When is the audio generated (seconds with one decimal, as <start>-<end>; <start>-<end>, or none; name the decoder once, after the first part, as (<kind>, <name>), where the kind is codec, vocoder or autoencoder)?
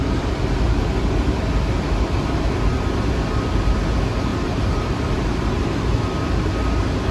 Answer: 4.3-4.9 (vocoder, BigVGAN v2)